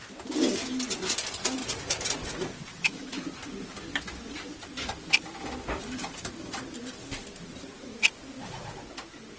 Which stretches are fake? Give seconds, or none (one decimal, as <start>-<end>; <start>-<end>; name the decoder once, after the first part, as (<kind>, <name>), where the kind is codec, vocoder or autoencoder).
2.7-3.3 (autoencoder, DAC-VAE)